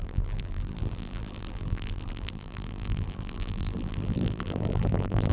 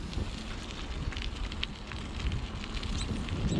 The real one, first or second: second